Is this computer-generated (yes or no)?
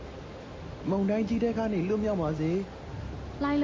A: no